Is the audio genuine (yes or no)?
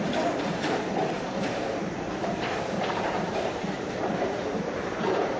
no